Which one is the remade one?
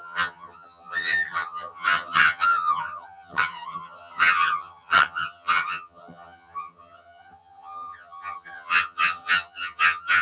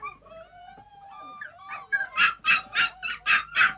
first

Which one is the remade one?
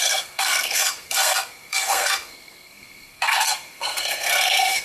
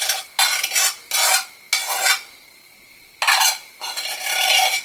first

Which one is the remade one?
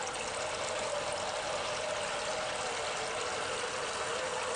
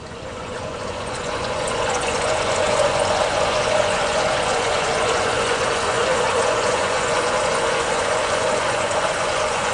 second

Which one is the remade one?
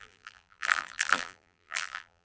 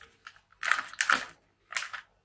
first